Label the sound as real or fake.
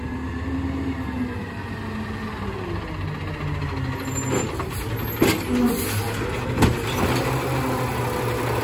real